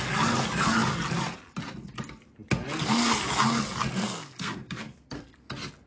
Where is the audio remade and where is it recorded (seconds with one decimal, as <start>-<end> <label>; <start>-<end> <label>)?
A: 0.0-4.0 recorded; 4.0-5.2 remade; 5.2-5.9 recorded